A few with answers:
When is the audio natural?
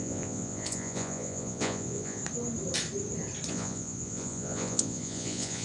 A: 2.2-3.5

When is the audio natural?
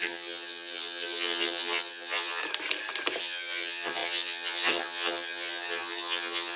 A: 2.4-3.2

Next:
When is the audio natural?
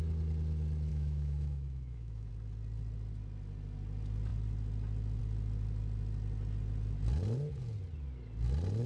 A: 0.0-0.9; 2.3-8.9